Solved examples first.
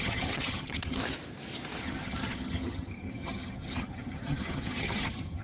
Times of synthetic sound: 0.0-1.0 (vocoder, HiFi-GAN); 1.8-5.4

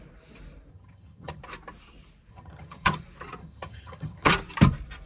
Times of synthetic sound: 0.7-1.4 (vocoder, HiFi-GAN); 2.3-3.0; 3.4-4.3

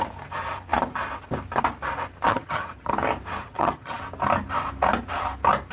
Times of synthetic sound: 2.3-2.9 (vocoder, HiFi-GAN); 3.4-4.0

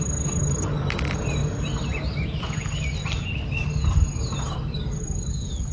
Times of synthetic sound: none

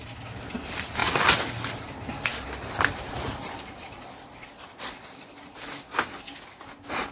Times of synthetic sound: none

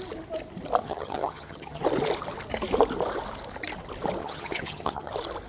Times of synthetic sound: 0.8-1.8 (vocoder, HiFi-GAN); 4.2-5.1

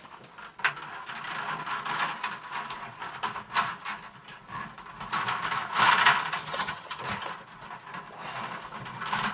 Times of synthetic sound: 6.4-7.0 (vocoder, HiFi-GAN)